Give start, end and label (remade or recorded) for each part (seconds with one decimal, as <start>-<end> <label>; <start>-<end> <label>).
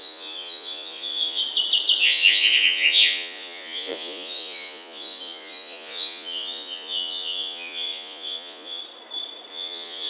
0.0-1.4 remade; 1.4-2.0 recorded; 2.0-8.8 remade; 8.8-9.5 recorded; 9.5-10.1 remade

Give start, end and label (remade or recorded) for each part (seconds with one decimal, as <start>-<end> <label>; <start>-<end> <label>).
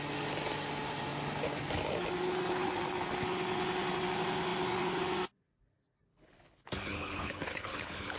0.0-6.1 recorded; 6.1-8.2 remade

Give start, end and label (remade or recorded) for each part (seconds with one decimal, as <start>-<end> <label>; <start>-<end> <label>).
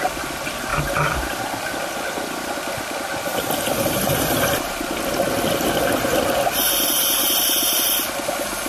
0.0-0.7 recorded; 0.7-1.4 remade; 1.4-6.6 recorded; 6.6-7.4 remade; 7.4-8.7 recorded